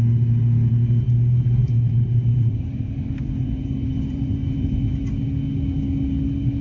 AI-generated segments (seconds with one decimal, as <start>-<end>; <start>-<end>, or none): 1.6-5.1